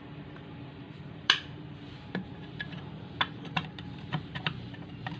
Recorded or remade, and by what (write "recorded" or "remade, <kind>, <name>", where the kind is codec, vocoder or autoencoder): remade, vocoder, BigVGAN v2